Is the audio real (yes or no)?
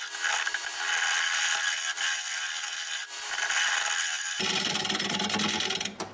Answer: yes